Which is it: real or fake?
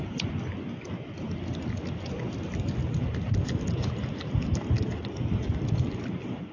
real